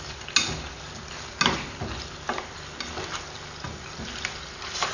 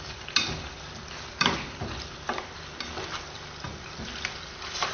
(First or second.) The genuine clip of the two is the first